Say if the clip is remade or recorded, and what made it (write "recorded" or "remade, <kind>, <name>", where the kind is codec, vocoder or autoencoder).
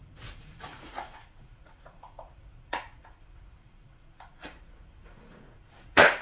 remade, vocoder, Vocos